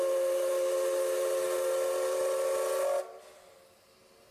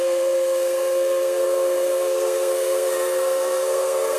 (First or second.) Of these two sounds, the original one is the first